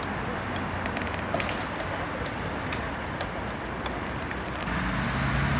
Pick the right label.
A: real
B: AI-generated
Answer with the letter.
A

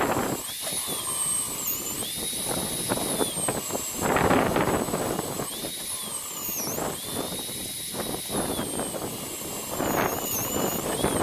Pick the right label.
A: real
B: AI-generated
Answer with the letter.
B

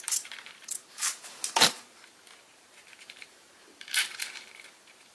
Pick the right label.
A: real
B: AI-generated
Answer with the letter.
B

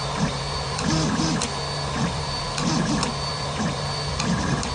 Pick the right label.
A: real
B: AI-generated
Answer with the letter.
B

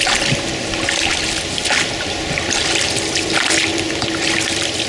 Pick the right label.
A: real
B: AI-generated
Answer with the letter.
B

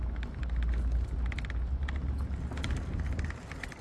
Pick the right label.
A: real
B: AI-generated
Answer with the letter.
A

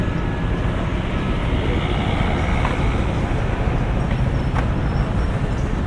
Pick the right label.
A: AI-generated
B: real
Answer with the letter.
B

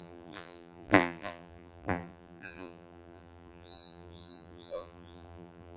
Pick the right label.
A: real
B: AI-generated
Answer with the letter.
B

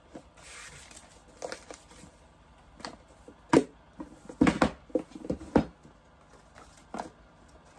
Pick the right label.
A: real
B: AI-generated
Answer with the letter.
A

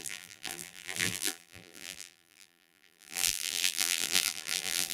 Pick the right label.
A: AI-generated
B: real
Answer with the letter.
A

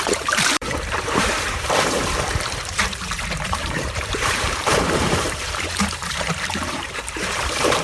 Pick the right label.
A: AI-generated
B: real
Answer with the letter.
A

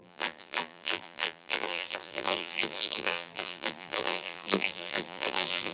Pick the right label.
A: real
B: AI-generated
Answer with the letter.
B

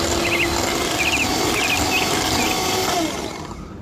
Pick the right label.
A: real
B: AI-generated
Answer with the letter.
A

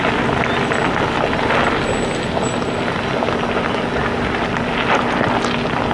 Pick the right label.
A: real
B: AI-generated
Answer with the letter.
A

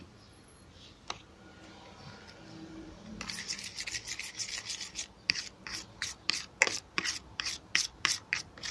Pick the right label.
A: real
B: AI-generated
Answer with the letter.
B